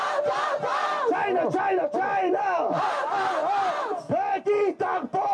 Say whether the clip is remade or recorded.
recorded